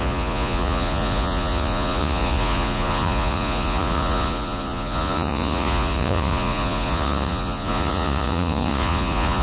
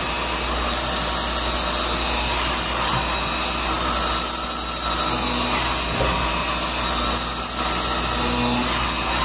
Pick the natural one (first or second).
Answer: second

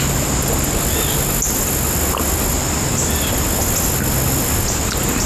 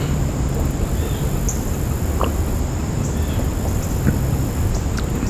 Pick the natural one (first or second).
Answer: first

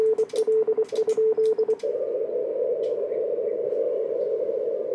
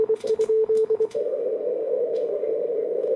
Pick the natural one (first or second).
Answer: first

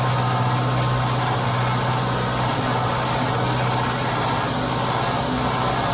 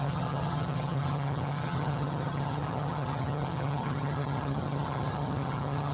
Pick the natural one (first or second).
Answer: first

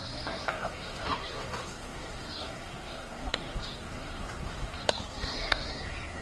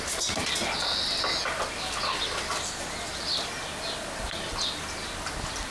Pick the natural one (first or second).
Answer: second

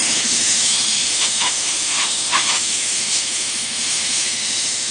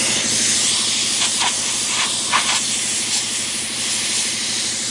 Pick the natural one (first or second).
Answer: second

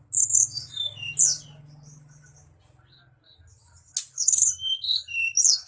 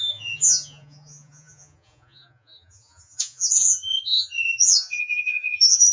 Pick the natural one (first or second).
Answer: first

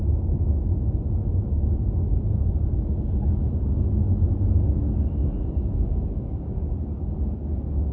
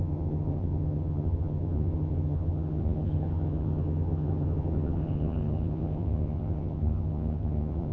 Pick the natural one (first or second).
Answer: first